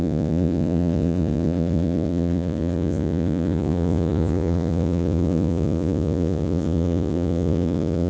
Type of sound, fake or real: fake